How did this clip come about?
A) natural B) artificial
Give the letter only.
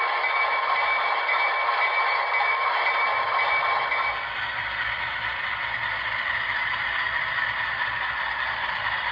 B